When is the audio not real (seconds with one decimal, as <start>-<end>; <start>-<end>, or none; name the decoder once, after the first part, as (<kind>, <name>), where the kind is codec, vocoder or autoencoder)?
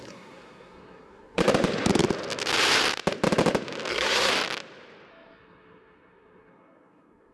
0.0-1.4 (codec, SNAC); 3.9-4.3; 5.1-7.3